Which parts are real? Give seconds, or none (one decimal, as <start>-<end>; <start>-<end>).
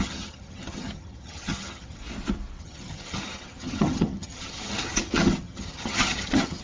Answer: 2.0-2.6